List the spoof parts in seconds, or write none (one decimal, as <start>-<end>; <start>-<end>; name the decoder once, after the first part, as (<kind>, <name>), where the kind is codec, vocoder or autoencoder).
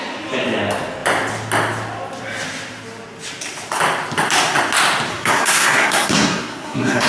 5.1-7.1 (codec, SNAC)